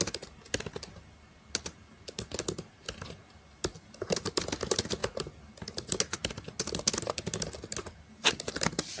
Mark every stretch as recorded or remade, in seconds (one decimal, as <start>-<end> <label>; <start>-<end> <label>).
0.0-9.0 recorded